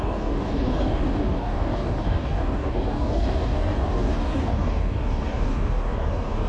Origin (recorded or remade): remade